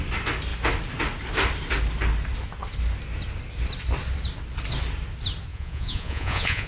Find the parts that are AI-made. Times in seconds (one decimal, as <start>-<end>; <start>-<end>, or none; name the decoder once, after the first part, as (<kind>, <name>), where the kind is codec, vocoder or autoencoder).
5.5-6.7 (vocoder, Vocos)

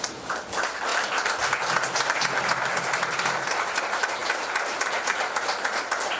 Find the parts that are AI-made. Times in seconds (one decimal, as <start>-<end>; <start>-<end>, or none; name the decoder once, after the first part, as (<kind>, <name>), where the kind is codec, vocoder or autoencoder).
none

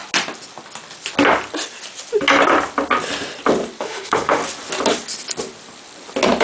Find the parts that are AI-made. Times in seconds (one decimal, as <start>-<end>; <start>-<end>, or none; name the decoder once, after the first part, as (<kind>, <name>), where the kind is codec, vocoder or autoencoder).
3.8-4.4 (autoencoder, DAC-VAE)

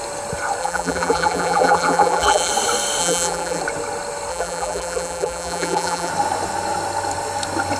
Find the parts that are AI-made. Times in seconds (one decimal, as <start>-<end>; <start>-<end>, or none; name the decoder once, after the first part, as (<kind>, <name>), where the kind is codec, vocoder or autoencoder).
0.6-2.5 (vocoder, BigVGAN v2); 3.0-3.6; 4.3-6.1

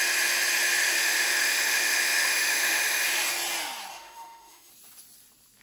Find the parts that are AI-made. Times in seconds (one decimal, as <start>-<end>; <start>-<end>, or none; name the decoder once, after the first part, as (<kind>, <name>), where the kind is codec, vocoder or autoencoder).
0.8-3.3 (autoencoder, DAC-VAE); 3.9-4.7

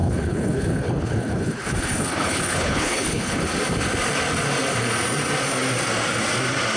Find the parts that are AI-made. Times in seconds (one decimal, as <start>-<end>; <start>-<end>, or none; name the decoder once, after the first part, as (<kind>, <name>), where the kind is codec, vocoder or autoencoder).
0.0-3.4 (codec, HILCodec)